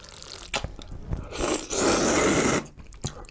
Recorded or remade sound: recorded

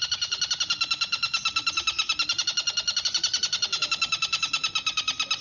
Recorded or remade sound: recorded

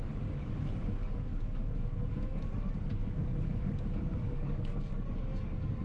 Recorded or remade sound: remade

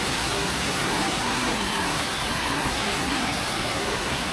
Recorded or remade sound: remade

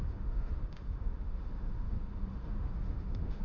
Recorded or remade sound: remade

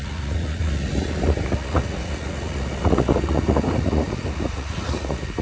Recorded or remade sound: remade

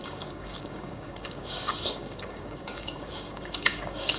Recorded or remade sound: remade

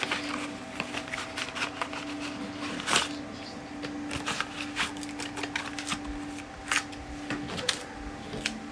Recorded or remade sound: recorded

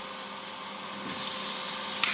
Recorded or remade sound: recorded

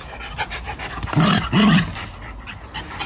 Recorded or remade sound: recorded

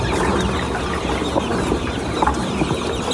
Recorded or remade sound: recorded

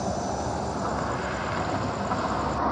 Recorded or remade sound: recorded